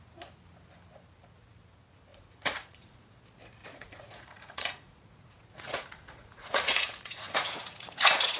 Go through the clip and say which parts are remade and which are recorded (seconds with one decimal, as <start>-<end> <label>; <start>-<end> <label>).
0.0-2.1 recorded; 2.1-3.1 remade; 3.1-3.6 recorded; 3.6-8.4 remade